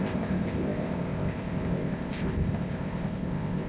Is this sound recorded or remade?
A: remade